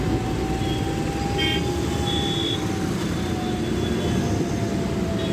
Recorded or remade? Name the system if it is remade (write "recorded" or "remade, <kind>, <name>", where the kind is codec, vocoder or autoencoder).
recorded